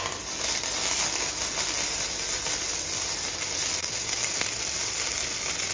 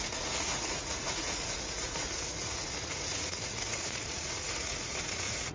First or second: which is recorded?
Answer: first